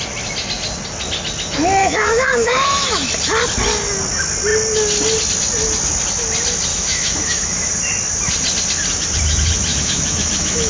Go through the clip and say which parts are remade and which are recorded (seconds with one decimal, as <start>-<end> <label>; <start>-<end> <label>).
0.0-1.8 recorded; 1.8-3.1 remade; 3.1-6.7 recorded; 6.7-7.7 remade; 7.7-9.7 recorded; 9.7-10.7 remade

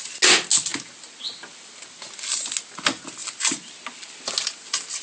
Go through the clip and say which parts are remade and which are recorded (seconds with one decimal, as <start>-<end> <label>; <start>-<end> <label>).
0.0-5.0 recorded